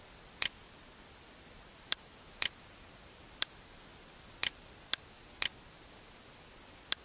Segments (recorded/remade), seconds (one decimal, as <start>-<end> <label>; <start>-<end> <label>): 0.0-7.0 recorded